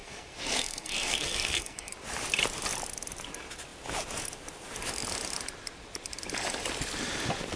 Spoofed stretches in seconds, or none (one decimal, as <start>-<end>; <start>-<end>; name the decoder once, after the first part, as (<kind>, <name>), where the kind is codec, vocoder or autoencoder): 0.0-1.9 (codec, SNAC)